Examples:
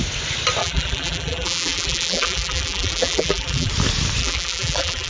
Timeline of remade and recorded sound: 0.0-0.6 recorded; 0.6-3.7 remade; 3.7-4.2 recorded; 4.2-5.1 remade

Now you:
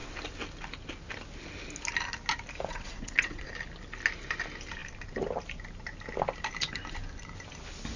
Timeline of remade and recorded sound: 0.0-2.7 recorded; 2.7-3.5 remade; 3.5-8.0 recorded

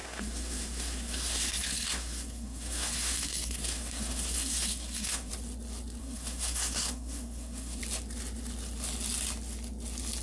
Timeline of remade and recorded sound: 0.0-5.3 remade; 5.3-6.0 recorded; 6.0-7.8 remade; 7.8-10.2 recorded

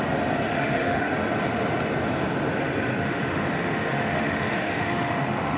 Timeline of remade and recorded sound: 0.0-0.5 recorded; 0.5-1.1 remade; 1.1-2.9 recorded; 2.9-5.6 remade